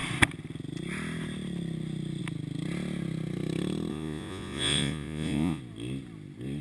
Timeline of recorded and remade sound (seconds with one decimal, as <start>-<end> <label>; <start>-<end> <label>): 0.0-3.9 recorded; 3.9-5.6 remade; 5.6-6.6 recorded